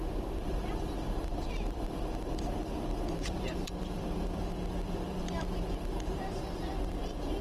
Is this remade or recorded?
remade